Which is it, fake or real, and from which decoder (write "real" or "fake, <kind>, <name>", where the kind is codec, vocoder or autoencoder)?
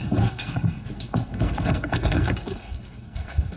fake, codec, SNAC